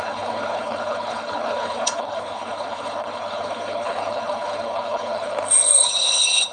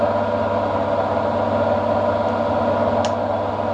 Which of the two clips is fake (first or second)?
first